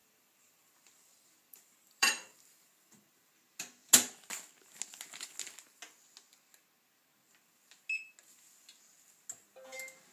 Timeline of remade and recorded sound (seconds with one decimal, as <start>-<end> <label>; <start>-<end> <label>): 0.0-3.3 remade; 3.3-10.1 recorded